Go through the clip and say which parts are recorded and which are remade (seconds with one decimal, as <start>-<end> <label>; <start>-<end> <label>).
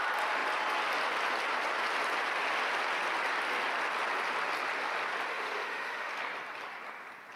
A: 0.0-5.3 recorded; 5.3-6.1 remade; 6.1-7.4 recorded